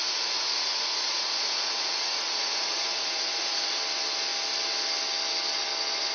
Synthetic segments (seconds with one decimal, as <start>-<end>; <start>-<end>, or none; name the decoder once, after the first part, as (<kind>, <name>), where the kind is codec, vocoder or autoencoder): 0.0-3.7 (vocoder, Vocos)